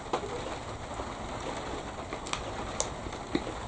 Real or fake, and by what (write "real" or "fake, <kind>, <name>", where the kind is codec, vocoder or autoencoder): real